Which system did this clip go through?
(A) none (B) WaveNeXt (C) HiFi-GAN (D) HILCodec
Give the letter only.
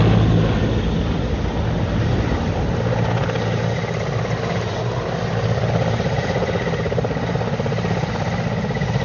A